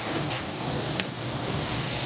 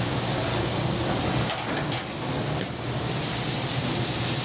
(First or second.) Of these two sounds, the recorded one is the second